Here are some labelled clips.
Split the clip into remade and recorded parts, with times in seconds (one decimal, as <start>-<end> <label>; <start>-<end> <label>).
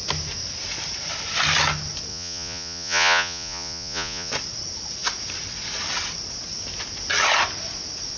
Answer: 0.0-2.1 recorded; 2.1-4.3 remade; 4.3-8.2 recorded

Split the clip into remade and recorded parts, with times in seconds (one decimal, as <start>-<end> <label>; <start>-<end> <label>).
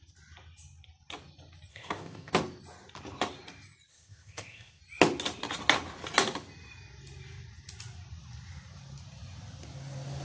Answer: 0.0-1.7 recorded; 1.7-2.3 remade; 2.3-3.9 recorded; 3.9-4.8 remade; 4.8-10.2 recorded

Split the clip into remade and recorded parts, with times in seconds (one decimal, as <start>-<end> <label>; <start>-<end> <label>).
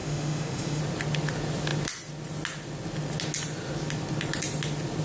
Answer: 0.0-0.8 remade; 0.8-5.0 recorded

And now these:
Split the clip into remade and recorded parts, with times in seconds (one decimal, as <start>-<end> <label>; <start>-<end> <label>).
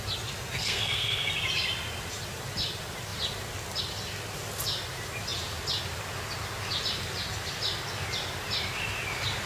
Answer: 0.0-0.6 recorded; 0.6-1.3 remade; 1.3-9.5 recorded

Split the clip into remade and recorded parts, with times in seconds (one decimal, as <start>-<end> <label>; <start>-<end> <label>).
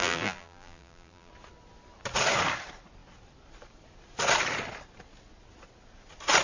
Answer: 0.0-1.3 remade; 1.3-6.4 recorded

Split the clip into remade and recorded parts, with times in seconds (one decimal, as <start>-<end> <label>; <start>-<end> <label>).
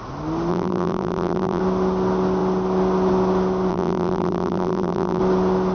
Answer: 0.0-0.5 recorded; 0.5-1.6 remade; 1.6-3.7 recorded; 3.7-5.2 remade; 5.2-5.7 recorded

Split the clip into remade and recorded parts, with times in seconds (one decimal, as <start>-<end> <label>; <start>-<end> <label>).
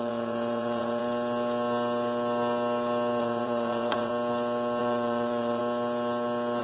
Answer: 0.0-1.0 remade; 1.0-3.2 recorded; 3.2-4.1 remade; 4.1-4.8 recorded; 4.8-5.6 remade; 5.6-6.6 recorded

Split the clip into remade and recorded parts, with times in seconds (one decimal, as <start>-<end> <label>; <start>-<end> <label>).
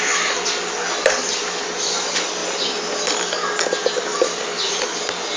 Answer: 0.0-4.1 recorded; 4.1-5.0 remade; 5.0-5.4 recorded